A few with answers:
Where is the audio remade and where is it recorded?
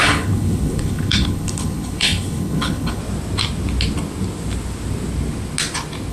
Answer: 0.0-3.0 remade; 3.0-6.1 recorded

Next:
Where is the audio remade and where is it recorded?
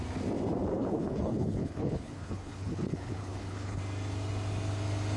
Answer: 0.0-0.7 recorded; 0.7-3.8 remade; 3.8-5.2 recorded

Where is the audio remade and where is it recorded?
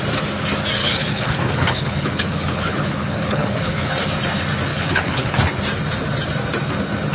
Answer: 0.0-0.8 recorded; 0.8-3.9 remade; 3.9-4.7 recorded; 4.7-5.4 remade; 5.4-7.1 recorded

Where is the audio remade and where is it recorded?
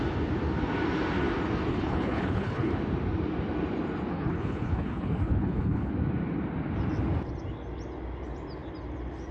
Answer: 0.0-1.7 recorded; 1.7-2.7 remade; 2.7-4.1 recorded; 4.1-5.9 remade; 5.9-9.3 recorded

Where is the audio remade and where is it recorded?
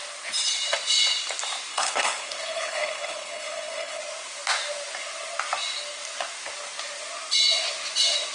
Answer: 0.0-1.7 recorded; 1.7-4.0 remade; 4.0-8.3 recorded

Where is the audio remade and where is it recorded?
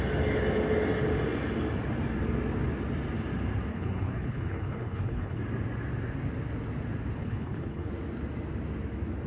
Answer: 0.0-3.7 recorded; 3.7-5.4 remade; 5.4-7.2 recorded; 7.2-7.9 remade; 7.9-9.3 recorded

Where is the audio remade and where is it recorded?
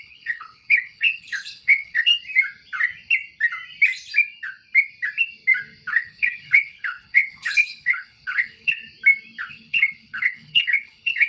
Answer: 0.0-2.1 remade; 2.1-5.9 recorded; 5.9-8.8 remade; 8.8-9.5 recorded; 9.5-11.3 remade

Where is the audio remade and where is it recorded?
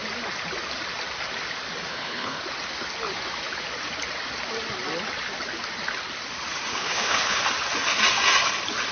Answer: 0.0-1.9 recorded; 1.9-2.4 remade; 2.4-6.7 recorded; 6.7-7.4 remade; 7.4-8.9 recorded